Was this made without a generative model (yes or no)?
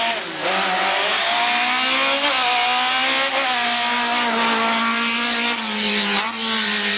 yes